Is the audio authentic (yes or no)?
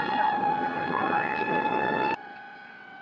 no